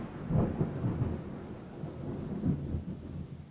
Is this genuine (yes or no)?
yes